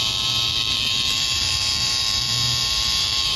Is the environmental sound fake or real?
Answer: fake